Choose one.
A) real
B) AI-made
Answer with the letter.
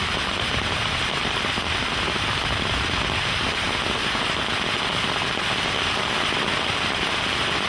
A